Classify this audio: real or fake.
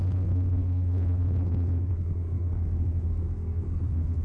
fake